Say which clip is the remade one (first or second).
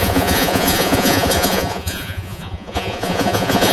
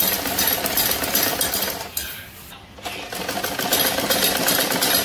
first